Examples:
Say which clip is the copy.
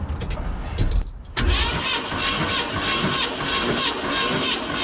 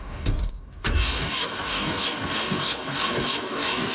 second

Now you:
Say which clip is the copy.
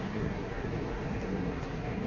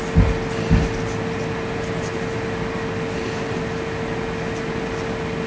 first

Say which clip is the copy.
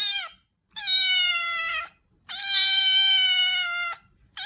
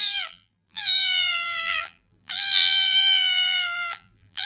second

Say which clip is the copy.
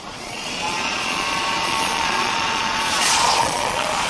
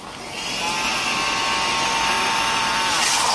first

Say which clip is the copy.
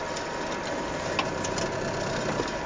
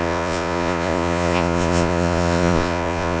second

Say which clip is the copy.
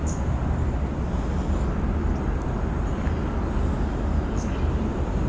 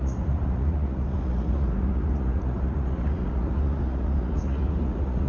second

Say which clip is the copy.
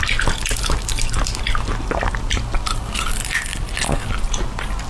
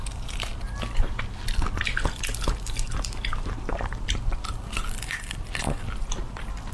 second